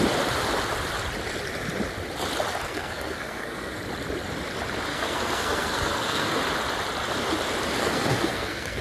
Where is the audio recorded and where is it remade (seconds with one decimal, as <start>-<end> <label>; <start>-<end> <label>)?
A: 0.0-2.5 recorded; 2.5-3.8 remade; 3.8-4.9 recorded; 4.9-6.4 remade; 6.4-7.8 recorded; 7.8-8.8 remade